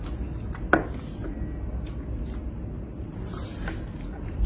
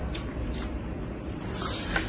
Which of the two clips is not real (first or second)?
second